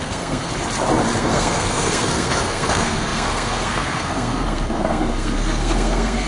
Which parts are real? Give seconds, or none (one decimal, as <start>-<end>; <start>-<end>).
0.5-1.2